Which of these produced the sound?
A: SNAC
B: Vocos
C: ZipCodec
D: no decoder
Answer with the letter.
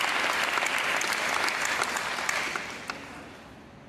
D